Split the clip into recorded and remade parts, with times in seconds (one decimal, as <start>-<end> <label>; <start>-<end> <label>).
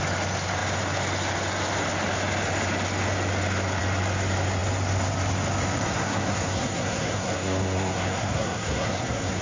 0.0-5.8 recorded; 5.8-9.4 remade